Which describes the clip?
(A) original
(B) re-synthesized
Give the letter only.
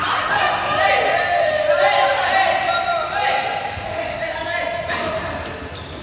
A